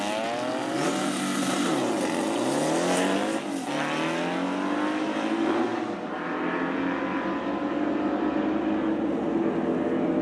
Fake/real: real